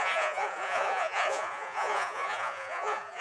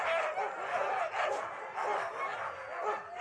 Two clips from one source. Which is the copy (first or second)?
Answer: first